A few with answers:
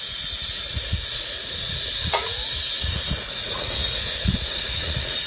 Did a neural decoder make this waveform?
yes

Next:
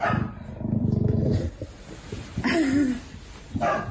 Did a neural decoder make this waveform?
no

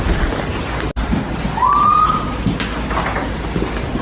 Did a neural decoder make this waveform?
no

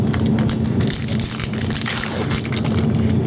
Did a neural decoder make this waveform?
no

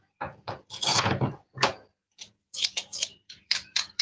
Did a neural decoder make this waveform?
yes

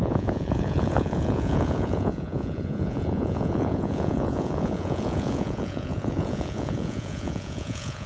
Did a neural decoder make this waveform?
yes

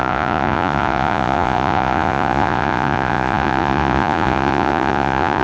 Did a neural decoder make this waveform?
yes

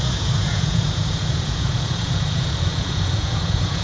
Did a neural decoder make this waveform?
yes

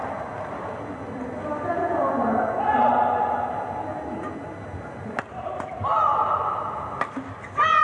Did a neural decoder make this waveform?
no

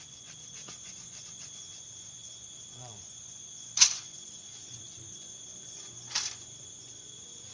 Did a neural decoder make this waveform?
yes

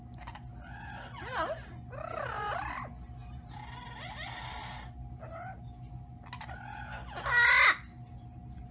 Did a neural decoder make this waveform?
no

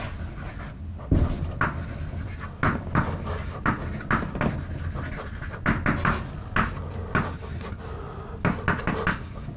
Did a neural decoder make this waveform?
no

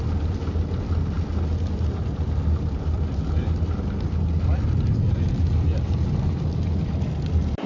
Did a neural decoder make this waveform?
no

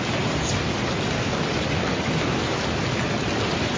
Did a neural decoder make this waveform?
no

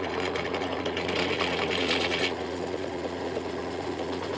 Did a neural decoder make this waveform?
yes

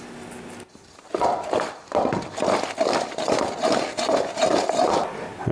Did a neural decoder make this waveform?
no